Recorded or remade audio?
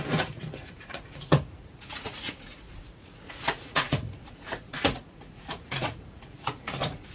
remade